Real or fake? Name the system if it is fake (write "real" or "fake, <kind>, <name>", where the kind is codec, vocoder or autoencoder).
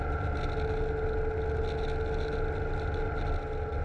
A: real